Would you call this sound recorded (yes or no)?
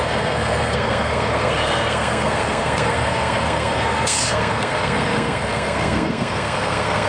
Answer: no